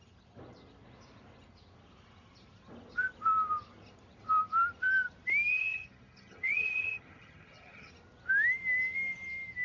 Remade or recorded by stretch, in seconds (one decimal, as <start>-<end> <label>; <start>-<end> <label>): 0.0-5.5 recorded; 5.5-7.9 remade; 7.9-9.6 recorded